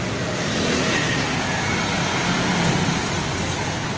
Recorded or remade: recorded